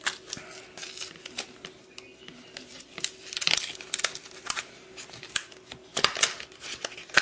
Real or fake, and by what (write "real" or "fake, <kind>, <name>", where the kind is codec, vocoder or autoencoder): real